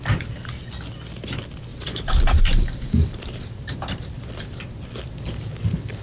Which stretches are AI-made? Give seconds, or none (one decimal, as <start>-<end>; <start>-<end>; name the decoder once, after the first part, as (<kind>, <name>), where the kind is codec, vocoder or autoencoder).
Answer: 1.7-4.6 (vocoder, BigVGAN v2)